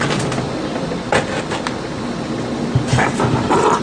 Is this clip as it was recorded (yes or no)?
yes